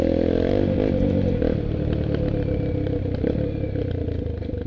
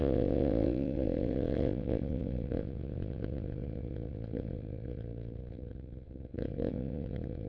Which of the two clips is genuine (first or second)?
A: first